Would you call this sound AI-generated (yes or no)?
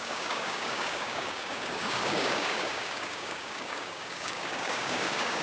yes